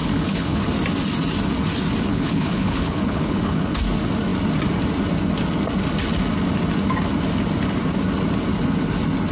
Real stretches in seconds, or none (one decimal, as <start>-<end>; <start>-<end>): 0.6-2.1; 3.8-9.3